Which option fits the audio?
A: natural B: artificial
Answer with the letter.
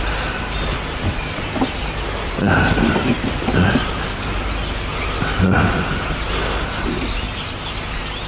A